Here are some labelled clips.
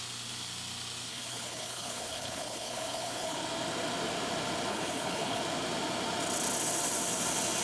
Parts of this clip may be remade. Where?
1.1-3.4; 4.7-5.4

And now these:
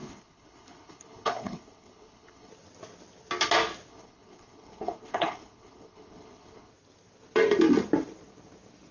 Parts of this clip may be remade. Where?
0.0-2.5; 3.9-6.7

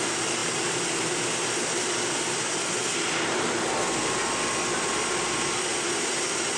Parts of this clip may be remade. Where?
none

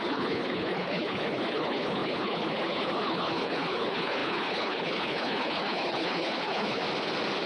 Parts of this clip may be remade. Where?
0.0-6.8

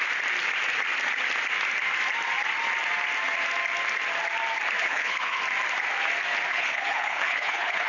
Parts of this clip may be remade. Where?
4.8-5.4; 6.5-7.9

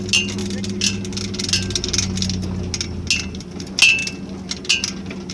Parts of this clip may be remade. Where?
none

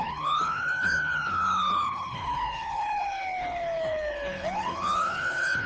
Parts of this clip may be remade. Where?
0.0-5.7

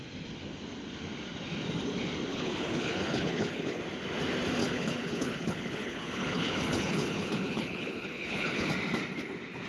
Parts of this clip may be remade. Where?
2.3-3.8; 4.6-8.7